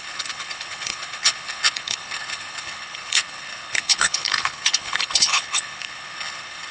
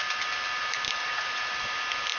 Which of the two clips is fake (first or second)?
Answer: first